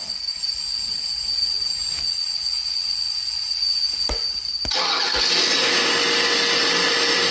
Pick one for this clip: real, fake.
real